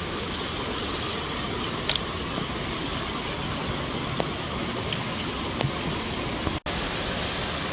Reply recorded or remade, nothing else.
recorded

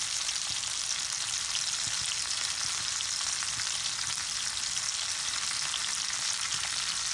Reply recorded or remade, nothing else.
recorded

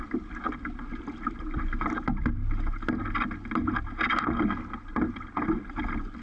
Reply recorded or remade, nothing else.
recorded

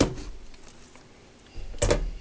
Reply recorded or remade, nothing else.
recorded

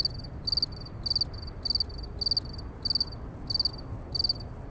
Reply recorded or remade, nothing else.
recorded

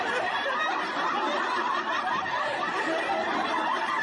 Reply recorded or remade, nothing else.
remade